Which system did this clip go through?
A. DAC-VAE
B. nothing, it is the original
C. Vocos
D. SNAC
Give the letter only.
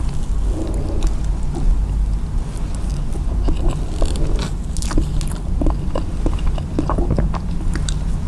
B